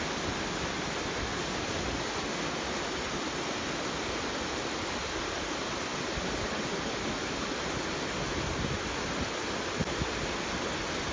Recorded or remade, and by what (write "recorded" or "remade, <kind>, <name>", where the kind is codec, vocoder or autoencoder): recorded